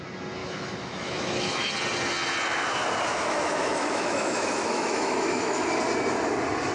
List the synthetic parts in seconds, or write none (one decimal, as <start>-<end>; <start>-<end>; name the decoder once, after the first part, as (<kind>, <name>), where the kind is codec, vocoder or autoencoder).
0.4-1.7 (autoencoder, DAC-VAE); 3.1-5.8